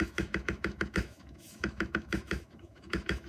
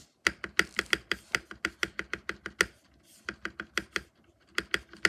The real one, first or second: second